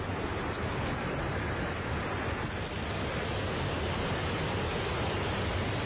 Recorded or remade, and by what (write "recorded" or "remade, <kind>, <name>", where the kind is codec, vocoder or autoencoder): recorded